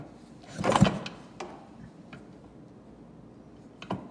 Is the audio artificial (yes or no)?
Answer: no